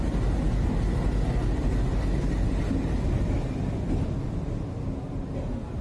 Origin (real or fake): real